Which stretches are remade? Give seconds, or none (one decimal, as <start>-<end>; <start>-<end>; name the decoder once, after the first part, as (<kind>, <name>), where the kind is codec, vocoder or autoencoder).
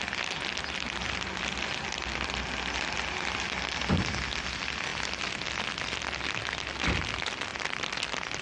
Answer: 7.5-8.4 (vocoder, BigVGAN v2)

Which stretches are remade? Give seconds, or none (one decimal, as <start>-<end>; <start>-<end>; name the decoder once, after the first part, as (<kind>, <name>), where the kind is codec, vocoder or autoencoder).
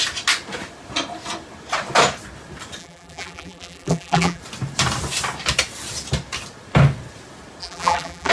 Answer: 2.8-4.4 (vocoder, BigVGAN v2); 7.6-8.3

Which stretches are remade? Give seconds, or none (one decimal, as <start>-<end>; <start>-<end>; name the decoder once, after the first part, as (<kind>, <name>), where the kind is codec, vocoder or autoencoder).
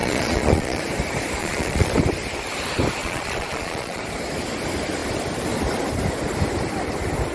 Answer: 0.0-0.8 (vocoder, Vocos); 1.4-1.9; 3.0-4.0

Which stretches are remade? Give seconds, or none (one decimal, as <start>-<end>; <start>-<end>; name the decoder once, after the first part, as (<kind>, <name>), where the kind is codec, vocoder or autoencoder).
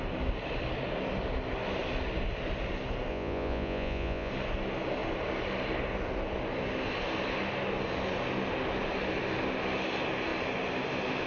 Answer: 3.1-4.3 (vocoder, Vocos)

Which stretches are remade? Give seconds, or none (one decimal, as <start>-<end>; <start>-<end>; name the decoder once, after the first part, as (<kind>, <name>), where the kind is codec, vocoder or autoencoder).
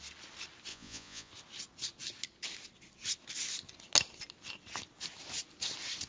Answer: 0.7-1.3 (vocoder, Vocos)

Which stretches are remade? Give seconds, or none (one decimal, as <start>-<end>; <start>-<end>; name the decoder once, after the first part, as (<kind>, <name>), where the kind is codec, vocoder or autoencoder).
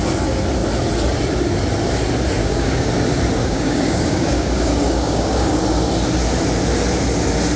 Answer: 2.4-2.9 (codec, DAC); 3.4-5.6